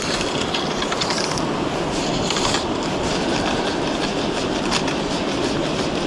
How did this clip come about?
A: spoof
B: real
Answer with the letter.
B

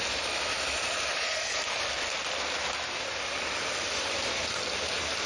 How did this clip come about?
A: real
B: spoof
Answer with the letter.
A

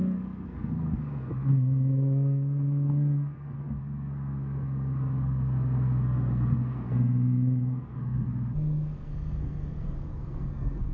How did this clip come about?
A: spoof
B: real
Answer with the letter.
A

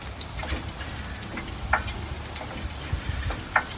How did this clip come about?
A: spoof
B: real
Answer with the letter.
B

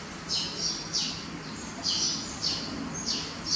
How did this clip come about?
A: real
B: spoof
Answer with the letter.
A